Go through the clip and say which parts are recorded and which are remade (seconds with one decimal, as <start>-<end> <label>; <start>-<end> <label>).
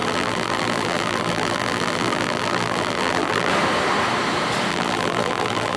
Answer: 0.0-3.5 remade; 3.5-4.7 recorded; 4.7-5.8 remade